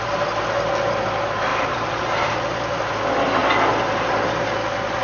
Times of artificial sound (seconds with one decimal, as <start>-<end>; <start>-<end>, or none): 1.5-2.9